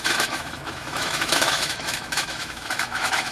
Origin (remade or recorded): remade